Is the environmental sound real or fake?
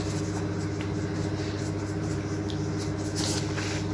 real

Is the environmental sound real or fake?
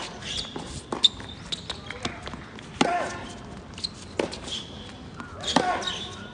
real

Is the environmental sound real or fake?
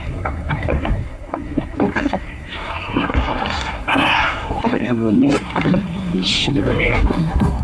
fake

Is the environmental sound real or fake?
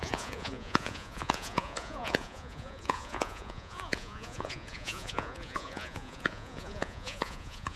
fake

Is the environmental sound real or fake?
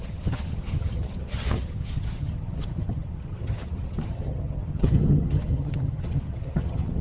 fake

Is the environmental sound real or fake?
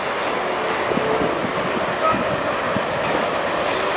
real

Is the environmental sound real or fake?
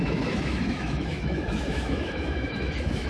fake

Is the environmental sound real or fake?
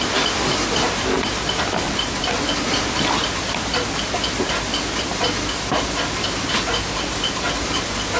real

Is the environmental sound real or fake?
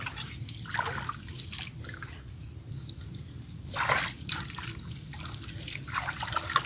real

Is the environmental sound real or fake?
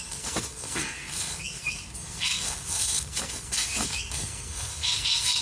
fake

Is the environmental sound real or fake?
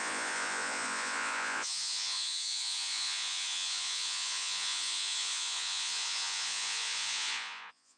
fake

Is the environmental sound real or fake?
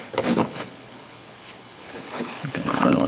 fake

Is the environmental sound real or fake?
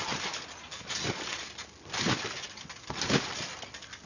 real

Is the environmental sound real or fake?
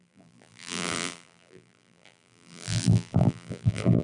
fake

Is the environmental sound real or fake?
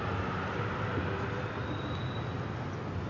real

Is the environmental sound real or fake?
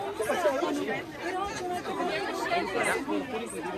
real